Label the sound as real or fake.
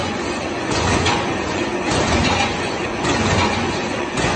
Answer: fake